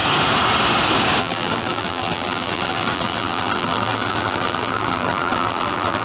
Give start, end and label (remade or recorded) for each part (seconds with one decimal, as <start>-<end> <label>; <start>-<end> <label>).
0.0-1.2 recorded; 1.2-6.0 remade